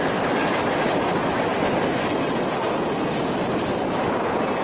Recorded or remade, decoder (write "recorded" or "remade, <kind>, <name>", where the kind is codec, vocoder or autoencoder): recorded